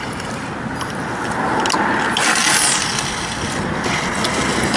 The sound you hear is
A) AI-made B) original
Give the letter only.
B